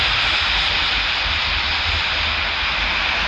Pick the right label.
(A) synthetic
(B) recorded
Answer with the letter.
B